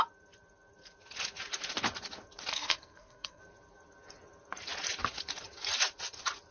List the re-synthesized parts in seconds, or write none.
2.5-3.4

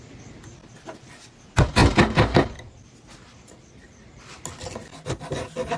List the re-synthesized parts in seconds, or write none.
none